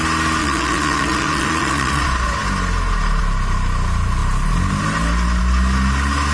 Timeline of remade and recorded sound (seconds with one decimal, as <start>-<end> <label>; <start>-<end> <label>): 0.0-0.4 recorded; 0.4-2.0 remade; 2.0-6.3 recorded